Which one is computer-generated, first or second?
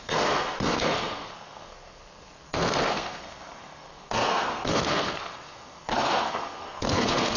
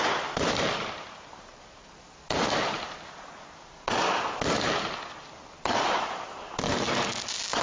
first